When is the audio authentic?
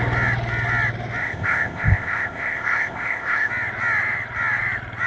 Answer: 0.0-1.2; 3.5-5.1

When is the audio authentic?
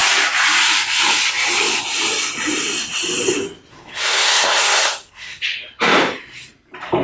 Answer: 0.0-3.7; 5.4-7.0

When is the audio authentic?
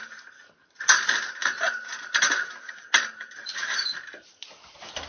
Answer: 0.0-5.1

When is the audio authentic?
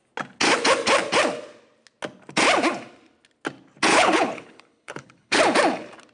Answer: 0.0-3.9; 5.4-6.1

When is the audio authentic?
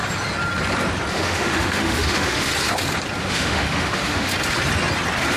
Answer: 0.0-1.1; 2.5-3.2; 4.3-5.4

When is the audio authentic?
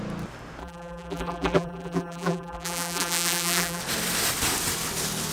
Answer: 0.0-0.6; 3.8-5.3